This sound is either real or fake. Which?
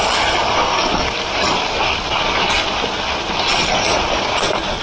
real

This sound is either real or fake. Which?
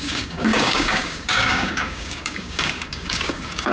fake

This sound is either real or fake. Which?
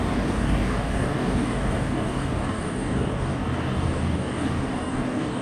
fake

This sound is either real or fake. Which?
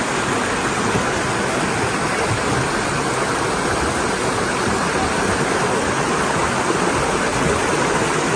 real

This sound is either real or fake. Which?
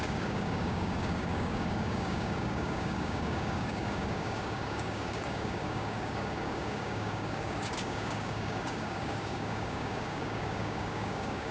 fake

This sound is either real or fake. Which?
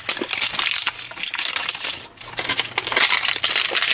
real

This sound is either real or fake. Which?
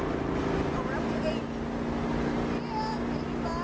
real